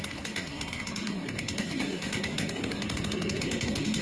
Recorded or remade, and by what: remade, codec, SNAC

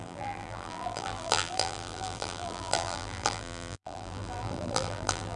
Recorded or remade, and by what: remade, vocoder, BigVGAN v2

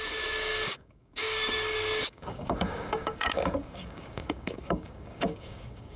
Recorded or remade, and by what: remade, codec, DAC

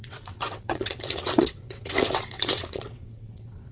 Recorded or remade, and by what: remade, vocoder, WaveNeXt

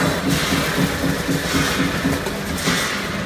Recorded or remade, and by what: recorded